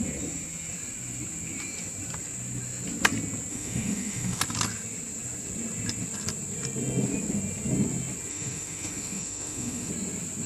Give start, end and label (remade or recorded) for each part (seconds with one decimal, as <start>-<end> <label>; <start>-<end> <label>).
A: 0.0-3.5 recorded; 3.5-4.4 remade; 4.4-8.3 recorded; 8.3-9.9 remade; 9.9-10.5 recorded

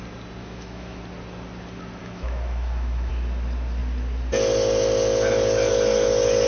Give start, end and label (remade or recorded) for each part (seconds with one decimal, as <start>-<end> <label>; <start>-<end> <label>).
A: 0.0-0.4 recorded; 0.4-1.0 remade; 1.0-2.0 recorded; 2.0-3.1 remade; 3.1-6.5 recorded

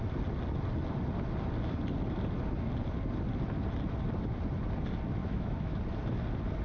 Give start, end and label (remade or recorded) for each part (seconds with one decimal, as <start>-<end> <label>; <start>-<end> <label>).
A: 0.0-5.2 recorded; 5.2-5.8 remade; 5.8-6.6 recorded

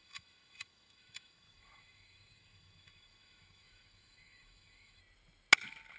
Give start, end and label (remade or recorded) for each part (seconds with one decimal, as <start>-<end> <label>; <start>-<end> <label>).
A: 0.0-5.0 remade; 5.0-6.0 recorded